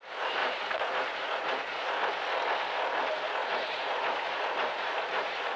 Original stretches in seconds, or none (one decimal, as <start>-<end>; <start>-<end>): 0.0-0.4; 2.1-3.4

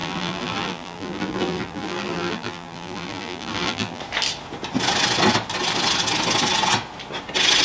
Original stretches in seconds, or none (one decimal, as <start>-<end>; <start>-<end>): 4.0-7.6

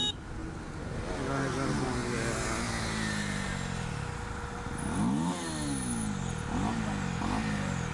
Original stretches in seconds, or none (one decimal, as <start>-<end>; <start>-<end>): 0.0-7.9

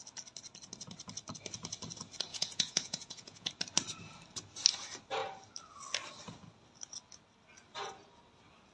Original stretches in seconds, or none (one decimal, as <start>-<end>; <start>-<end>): 0.0-2.3; 3.5-8.7

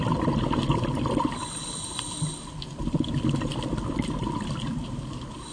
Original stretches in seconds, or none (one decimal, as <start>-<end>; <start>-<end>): 0.0-5.5

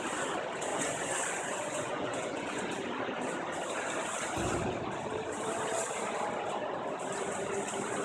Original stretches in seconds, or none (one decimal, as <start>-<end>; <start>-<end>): 0.0-0.7; 2.6-8.0